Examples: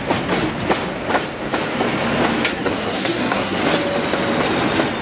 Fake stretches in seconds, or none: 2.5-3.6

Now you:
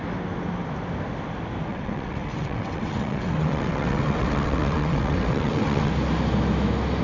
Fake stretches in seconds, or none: 1.7-5.9

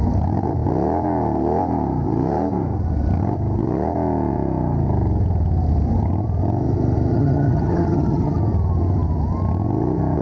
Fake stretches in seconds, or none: 7.1-8.4

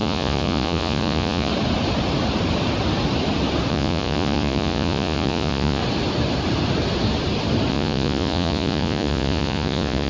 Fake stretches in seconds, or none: 0.0-1.5; 3.7-5.8; 7.7-10.1

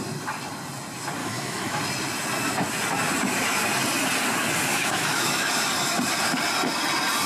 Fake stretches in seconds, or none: 1.2-1.8; 4.7-5.5

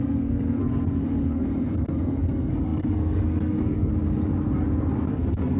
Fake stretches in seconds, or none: 0.0-3.9; 5.1-5.6

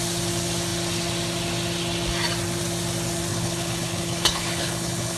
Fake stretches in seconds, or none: 3.3-5.2

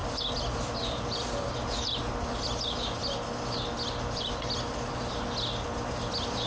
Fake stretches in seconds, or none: 0.0-2.0